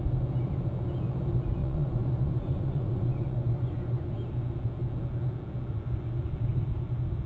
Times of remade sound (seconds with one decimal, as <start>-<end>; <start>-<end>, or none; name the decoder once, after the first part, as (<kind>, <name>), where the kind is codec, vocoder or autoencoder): 1.6-4.1 (vocoder, Vocos)